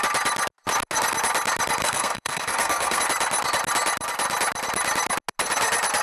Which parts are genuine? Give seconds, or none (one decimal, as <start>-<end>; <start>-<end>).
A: 0.0-1.8; 3.0-6.0